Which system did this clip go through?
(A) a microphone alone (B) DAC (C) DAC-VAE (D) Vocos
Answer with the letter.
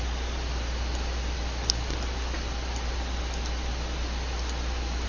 A